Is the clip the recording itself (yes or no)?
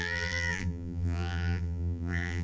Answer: no